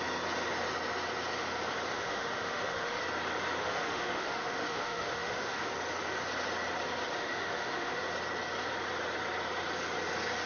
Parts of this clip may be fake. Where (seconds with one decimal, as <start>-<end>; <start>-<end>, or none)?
1.9-3.0; 3.6-5.7; 7.0-8.0

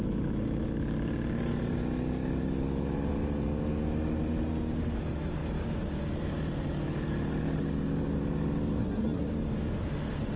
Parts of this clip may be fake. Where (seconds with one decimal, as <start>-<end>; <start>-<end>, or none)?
8.8-9.3

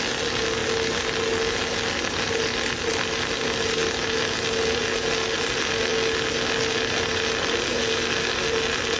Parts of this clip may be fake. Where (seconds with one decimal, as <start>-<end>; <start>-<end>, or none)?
none

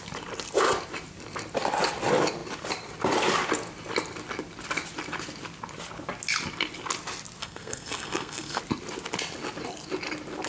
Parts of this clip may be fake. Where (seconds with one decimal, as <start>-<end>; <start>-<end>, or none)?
7.4-8.6